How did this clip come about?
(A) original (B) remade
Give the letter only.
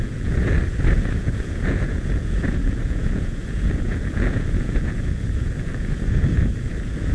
B